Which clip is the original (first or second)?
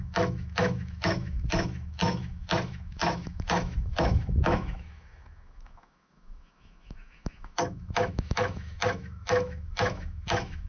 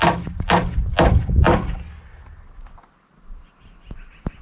second